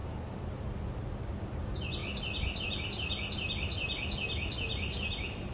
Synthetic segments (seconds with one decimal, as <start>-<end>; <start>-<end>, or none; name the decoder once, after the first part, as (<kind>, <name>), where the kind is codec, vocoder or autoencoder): none